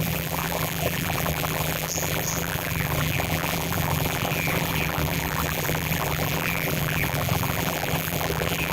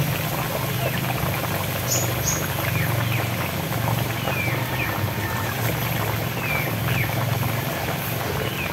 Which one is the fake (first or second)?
first